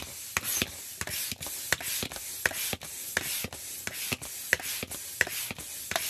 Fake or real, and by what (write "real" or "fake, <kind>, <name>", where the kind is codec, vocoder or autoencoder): real